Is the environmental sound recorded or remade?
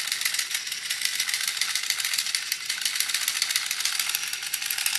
recorded